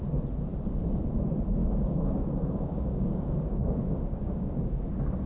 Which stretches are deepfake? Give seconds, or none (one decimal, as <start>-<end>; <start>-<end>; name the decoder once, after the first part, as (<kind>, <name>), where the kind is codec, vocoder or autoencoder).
1.6-4.8 (codec, DAC)